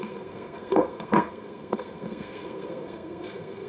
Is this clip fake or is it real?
fake